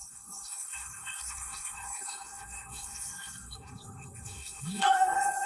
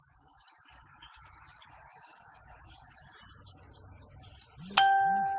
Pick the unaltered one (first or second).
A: second